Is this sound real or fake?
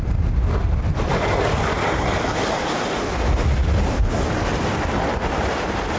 real